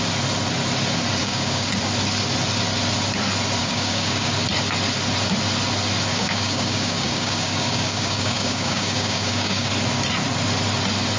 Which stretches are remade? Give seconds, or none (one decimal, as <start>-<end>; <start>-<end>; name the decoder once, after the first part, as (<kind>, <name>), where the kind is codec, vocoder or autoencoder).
1.2-1.7 (codec, DAC); 3.6-4.3; 6.1-9.7